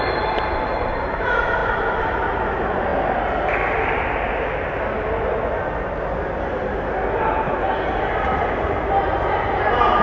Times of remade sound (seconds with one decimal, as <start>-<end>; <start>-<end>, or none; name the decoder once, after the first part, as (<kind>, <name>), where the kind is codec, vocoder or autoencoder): 0.0-2.9 (vocoder, BigVGAN v2); 7.2-10.0